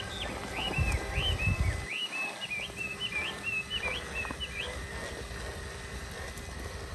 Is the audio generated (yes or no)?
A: no